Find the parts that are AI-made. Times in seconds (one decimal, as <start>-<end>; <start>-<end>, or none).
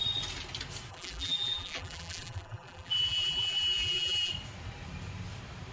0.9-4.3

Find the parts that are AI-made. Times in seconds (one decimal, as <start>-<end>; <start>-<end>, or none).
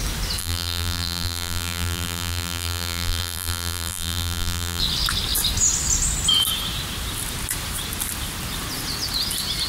0.4-4.8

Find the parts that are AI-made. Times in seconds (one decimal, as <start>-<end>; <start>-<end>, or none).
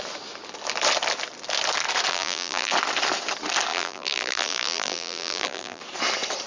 2.1-2.7; 3.7-5.8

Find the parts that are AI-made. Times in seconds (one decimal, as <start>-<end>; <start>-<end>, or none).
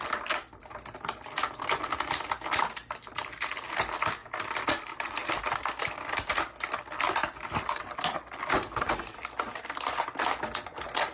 none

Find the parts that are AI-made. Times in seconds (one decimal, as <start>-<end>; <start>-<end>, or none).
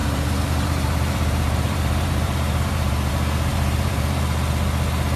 0.0-3.1; 3.5-4.2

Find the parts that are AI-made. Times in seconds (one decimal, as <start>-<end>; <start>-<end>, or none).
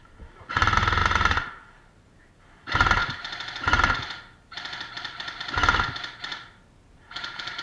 1.0-2.4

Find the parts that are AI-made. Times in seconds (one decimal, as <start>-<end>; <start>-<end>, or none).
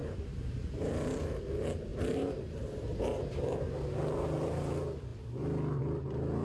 0.0-1.4; 1.9-3.6